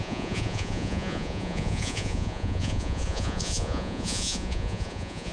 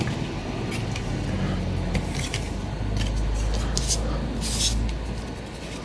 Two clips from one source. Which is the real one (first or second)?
second